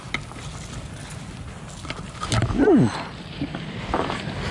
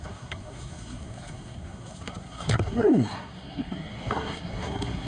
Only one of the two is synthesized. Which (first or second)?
second